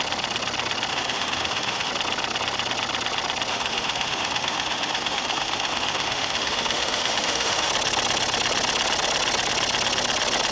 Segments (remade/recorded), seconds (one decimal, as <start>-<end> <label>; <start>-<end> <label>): 0.0-0.9 recorded; 0.9-1.9 remade; 1.9-3.5 recorded; 3.5-7.7 remade; 7.7-10.5 recorded